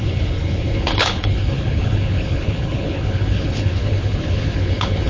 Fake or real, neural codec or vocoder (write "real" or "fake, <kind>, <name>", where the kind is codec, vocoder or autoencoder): fake, codec, HILCodec